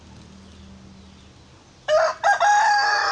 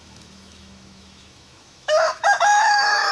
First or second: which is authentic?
first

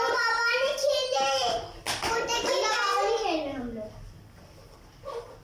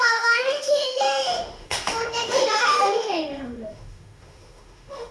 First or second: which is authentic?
first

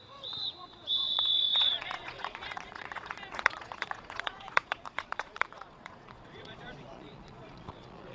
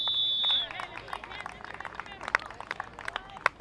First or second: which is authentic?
second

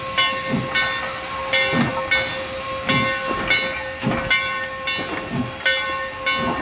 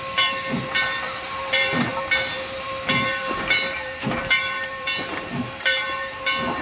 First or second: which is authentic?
first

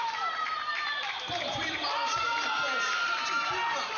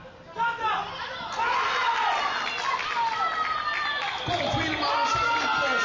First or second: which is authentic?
second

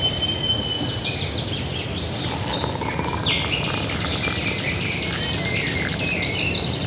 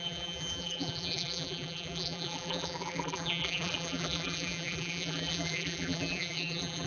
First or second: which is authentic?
first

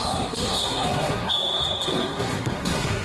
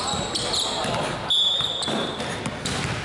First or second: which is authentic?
second